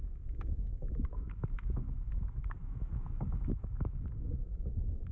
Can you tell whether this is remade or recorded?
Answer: remade